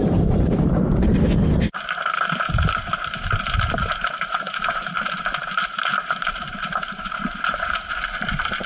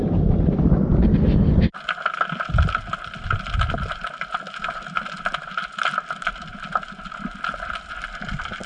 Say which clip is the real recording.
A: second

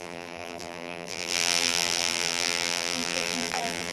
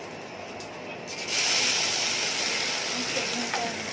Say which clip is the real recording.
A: second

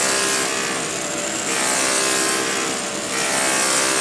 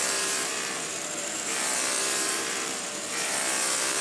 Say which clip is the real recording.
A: first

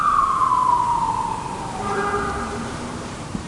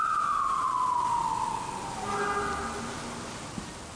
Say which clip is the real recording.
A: second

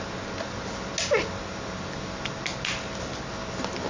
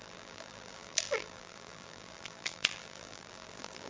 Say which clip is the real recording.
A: first